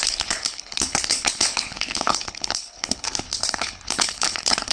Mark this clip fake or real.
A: fake